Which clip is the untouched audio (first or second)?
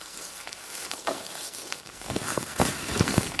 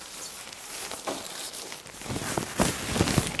second